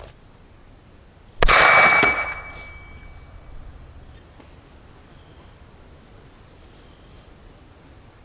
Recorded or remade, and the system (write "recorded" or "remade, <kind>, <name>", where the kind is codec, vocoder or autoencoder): recorded